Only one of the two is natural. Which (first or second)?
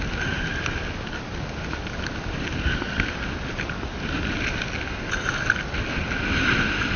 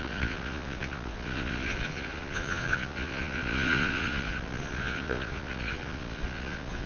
first